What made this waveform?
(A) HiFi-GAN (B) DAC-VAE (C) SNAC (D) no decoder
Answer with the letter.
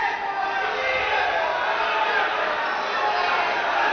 D